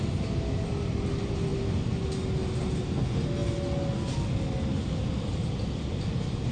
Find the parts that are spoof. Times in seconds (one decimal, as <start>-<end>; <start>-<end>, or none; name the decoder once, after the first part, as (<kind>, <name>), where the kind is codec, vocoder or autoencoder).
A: none